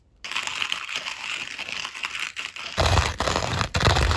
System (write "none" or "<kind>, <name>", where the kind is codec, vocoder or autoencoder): vocoder, BigVGAN v2